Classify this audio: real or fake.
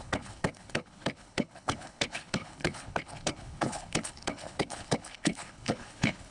fake